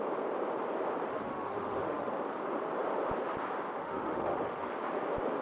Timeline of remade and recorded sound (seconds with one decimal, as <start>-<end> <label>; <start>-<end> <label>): 0.0-1.1 recorded; 1.1-2.1 remade; 2.1-3.8 recorded; 3.8-4.7 remade; 4.7-5.4 recorded